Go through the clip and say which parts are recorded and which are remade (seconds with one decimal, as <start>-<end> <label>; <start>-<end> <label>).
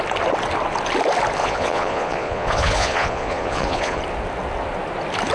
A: 0.0-1.4 recorded; 1.4-4.0 remade; 4.0-5.3 recorded